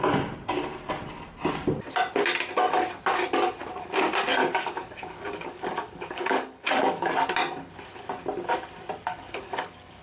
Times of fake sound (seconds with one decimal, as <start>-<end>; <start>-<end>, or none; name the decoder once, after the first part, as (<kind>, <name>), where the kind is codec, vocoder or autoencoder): 4.4-7.1 (codec, DAC); 9.1-10.0